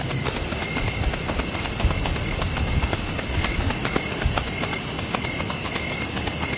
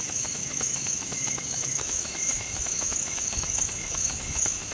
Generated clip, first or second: second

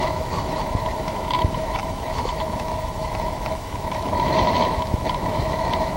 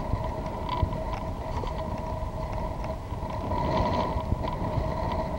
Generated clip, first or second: first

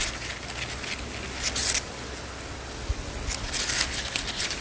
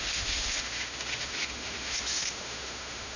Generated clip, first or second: second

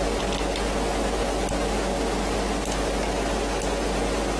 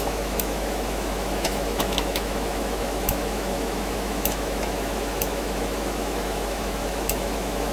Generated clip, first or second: second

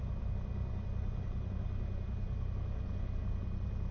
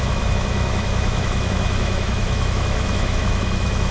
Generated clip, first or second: second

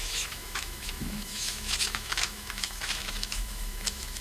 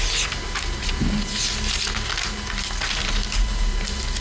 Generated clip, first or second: first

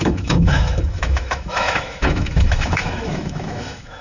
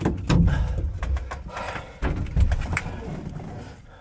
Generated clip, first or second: first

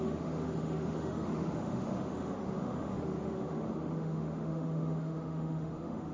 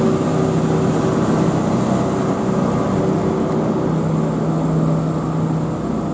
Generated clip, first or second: first